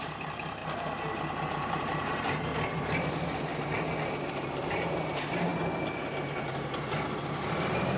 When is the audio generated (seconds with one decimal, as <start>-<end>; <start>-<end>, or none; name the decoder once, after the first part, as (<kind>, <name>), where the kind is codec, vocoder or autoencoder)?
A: 0.0-0.6 (vocoder, BigVGAN v2); 1.5-2.5; 3.1-3.5; 4.3-5.5; 7.2-8.0

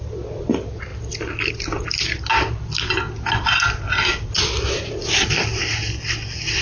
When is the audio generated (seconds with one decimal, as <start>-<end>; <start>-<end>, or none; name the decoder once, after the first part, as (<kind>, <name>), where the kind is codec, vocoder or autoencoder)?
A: none

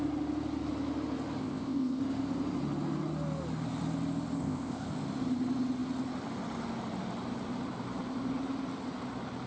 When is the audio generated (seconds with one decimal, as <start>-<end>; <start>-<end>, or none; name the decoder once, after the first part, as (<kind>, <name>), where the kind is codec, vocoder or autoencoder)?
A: 1.4-2.0 (codec, ZipCodec); 4.4-4.9

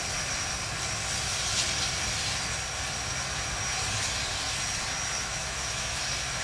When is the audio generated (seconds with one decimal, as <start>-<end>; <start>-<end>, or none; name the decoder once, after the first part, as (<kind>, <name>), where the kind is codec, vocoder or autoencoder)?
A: 5.2-6.0 (autoencoder, DAC-VAE)

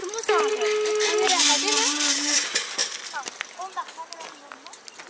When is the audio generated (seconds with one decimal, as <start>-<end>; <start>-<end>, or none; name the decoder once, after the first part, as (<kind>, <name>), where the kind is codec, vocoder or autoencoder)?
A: none

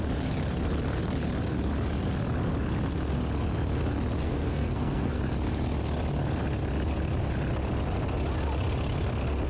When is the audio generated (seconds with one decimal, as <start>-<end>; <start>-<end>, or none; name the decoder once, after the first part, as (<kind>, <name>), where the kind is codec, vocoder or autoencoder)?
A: 4.2-5.2 (codec, SNAC)

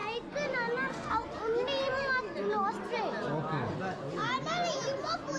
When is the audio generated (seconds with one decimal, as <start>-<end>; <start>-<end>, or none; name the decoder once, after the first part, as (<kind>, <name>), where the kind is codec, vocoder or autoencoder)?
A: none

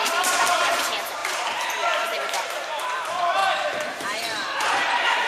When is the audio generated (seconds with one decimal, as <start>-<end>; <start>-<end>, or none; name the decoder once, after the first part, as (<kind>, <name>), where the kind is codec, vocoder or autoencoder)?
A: 0.0-5.3 (vocoder, BigVGAN v2)